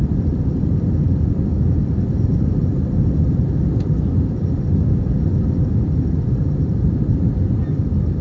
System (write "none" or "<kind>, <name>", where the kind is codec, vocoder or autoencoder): vocoder, BigVGAN v2